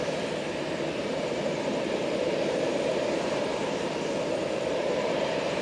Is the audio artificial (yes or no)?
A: yes